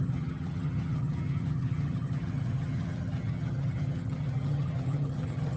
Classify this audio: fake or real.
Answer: fake